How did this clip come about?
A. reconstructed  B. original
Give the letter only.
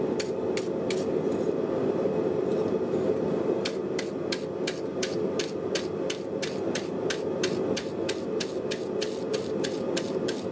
B